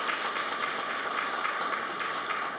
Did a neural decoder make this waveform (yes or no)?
no